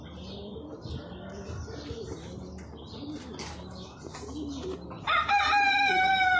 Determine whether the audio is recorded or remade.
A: recorded